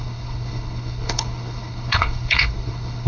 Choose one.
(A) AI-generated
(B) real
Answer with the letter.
A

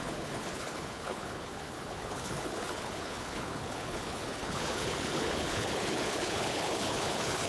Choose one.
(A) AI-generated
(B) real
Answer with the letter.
A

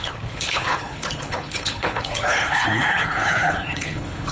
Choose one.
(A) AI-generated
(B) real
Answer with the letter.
A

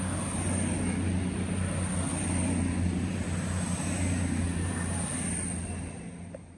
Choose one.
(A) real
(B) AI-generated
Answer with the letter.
A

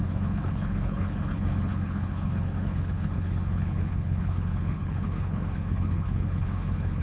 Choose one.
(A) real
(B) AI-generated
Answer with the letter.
B